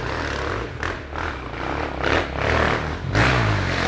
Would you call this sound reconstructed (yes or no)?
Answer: no